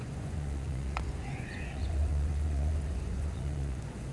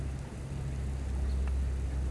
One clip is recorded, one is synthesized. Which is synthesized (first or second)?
first